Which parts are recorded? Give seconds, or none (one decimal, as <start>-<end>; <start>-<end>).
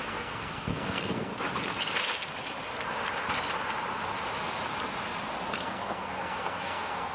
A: 1.3-5.6